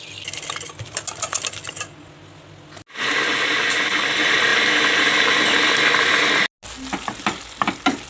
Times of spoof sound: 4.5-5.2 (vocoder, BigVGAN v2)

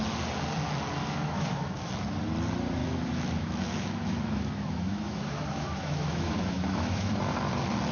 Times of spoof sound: 1.0-1.9 (autoencoder, DAC-VAE); 2.8-7.2

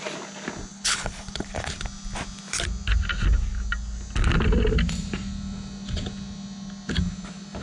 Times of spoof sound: 0.7-1.7 (codec, HILCodec)

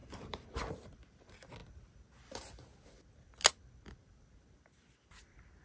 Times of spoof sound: 0.0-0.8 (vocoder, BigVGAN v2)

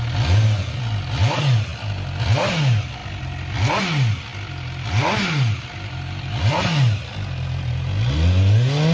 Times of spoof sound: none

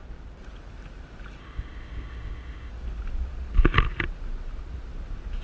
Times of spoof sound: 1.4-2.7 (codec, ZipCodec)